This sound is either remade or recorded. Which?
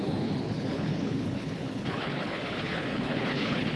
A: remade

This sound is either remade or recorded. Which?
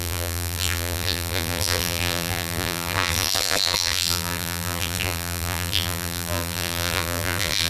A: remade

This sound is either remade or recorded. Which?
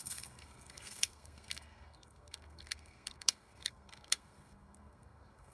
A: remade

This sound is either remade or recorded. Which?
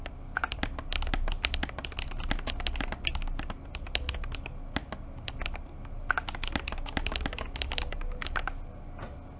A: recorded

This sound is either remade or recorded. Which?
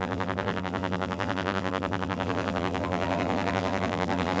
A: remade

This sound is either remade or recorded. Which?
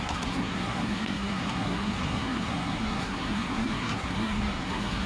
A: remade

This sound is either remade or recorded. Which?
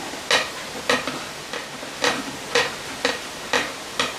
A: recorded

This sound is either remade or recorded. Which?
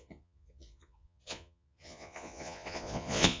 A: remade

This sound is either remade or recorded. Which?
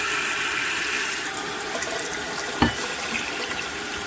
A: recorded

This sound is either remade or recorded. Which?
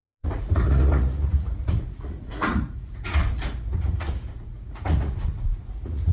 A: remade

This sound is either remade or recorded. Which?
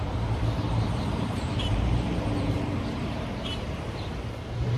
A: remade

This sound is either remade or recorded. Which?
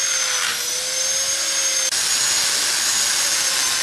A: recorded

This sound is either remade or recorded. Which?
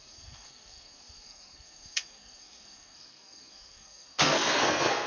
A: remade